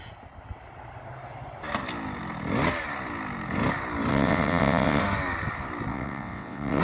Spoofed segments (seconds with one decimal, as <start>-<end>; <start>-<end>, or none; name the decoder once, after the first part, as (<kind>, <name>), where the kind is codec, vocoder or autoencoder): 4.1-5.0 (vocoder, WaveNeXt); 5.9-6.8